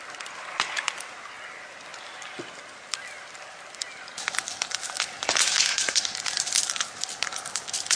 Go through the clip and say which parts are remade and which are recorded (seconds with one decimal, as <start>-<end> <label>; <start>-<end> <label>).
0.0-8.0 recorded